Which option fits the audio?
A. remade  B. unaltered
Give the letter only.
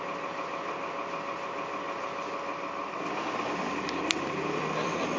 B